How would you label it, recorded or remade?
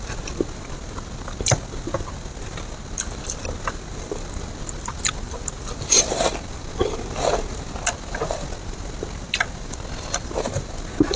recorded